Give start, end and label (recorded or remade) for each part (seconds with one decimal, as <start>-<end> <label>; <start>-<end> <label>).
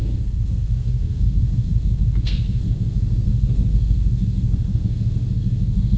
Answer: 0.0-6.0 remade